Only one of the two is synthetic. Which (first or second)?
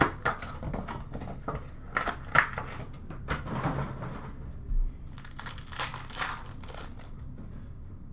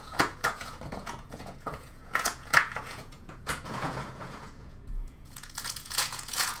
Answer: second